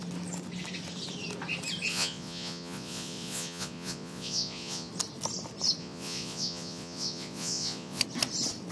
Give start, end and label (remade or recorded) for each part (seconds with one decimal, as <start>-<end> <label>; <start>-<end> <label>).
0.0-1.9 recorded; 1.9-4.9 remade; 4.9-5.8 recorded; 5.8-8.0 remade; 8.0-8.7 recorded